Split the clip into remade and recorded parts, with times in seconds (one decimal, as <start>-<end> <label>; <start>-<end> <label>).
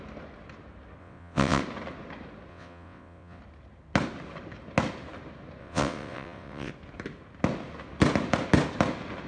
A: 0.0-1.0 recorded; 1.0-1.6 remade; 1.6-2.5 recorded; 2.5-3.4 remade; 3.4-5.6 recorded; 5.6-6.7 remade; 6.7-9.3 recorded